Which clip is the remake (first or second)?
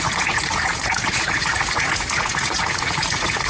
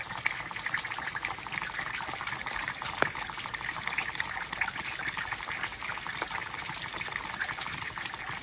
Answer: first